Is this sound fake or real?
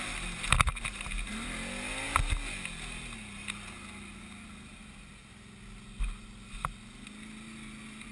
real